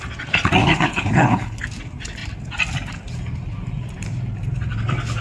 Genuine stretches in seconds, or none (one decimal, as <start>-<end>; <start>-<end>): 0.0-0.6; 1.6-5.2